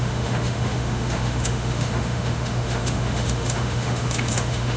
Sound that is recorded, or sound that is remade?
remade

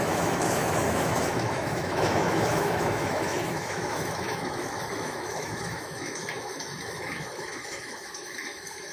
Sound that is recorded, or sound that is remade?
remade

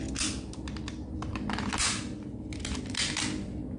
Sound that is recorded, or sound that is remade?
recorded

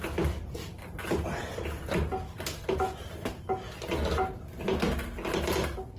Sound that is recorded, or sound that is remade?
recorded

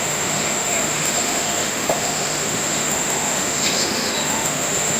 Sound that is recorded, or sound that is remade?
remade